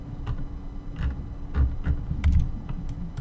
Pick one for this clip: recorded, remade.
recorded